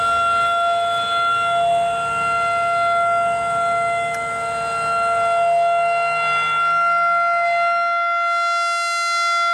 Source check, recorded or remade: recorded